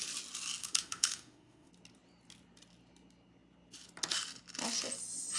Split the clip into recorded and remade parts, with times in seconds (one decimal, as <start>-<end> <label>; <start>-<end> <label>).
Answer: 0.0-0.6 recorded; 0.6-1.7 remade; 1.7-5.4 recorded